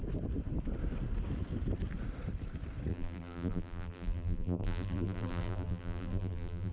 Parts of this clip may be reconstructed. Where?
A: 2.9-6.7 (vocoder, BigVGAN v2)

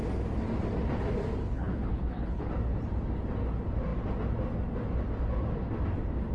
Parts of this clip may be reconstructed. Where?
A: 1.4-2.5 (codec, HILCodec)

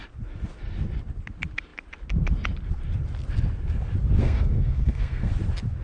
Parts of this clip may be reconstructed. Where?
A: 4.2-5.3 (codec, SNAC)

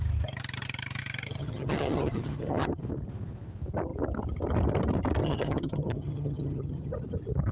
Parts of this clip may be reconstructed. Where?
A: 1.4-2.8 (vocoder, HiFi-GAN); 5.2-6.9

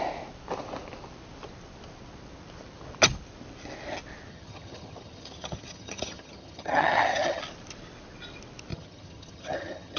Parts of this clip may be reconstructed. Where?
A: 4.3-7.4 (vocoder, HiFi-GAN); 8.7-10.0

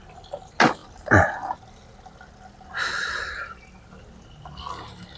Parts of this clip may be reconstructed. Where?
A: none

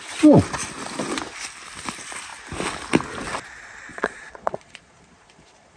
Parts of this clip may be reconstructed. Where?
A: 3.9-5.8 (vocoder, Vocos)

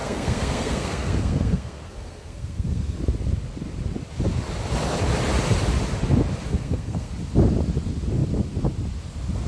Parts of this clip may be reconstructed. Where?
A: 0.0-3.0 (codec, SNAC); 6.5-7.1